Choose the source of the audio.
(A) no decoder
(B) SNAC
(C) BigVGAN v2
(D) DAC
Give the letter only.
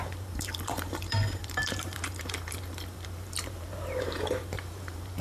C